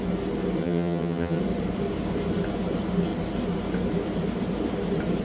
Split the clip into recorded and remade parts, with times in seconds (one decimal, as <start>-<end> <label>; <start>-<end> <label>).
0.0-0.6 recorded; 0.6-1.4 remade; 1.4-5.2 recorded